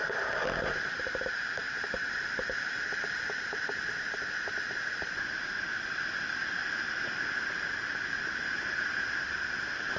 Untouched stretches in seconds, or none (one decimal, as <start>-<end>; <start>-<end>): 0.0-10.0